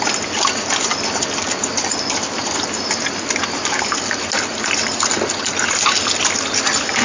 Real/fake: real